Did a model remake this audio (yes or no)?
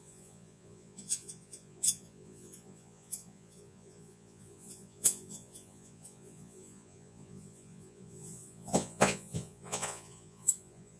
yes